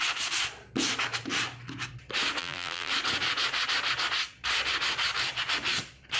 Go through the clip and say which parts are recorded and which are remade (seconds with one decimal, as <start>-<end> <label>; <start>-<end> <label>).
0.0-2.4 recorded; 2.4-2.9 remade; 2.9-6.2 recorded